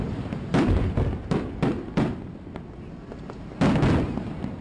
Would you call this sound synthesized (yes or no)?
no